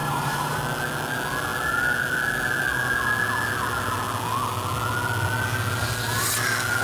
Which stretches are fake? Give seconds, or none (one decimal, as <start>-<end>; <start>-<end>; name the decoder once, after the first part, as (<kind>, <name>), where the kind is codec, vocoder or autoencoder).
0.0-0.6 (vocoder, BigVGAN v2)